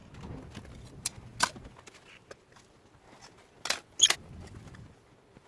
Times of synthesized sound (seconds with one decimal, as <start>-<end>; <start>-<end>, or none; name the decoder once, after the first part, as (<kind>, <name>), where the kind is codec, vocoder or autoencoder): none